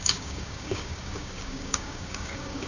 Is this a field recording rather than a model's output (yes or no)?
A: no